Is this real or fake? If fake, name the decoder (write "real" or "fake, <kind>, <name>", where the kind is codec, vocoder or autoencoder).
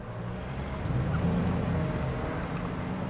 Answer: real